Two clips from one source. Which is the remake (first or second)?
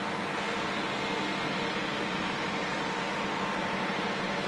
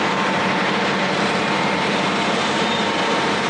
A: second